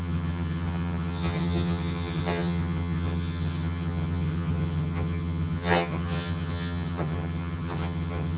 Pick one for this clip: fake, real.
fake